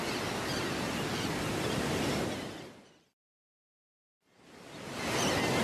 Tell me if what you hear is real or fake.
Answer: real